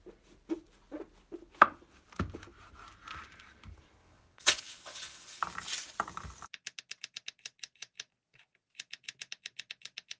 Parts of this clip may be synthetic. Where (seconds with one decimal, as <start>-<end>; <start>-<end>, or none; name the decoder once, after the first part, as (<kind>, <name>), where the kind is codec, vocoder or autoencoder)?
4.0-5.4 (vocoder, WaveNeXt)